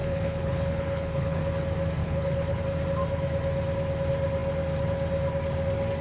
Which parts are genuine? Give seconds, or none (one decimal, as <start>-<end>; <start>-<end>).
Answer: 1.4-2.0; 2.6-6.0